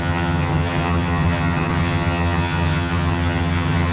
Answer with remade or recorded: remade